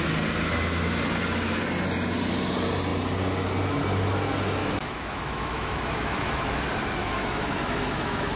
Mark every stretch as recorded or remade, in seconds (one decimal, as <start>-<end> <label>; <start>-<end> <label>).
0.0-4.6 recorded; 4.6-6.6 remade; 6.6-7.0 recorded; 7.0-8.4 remade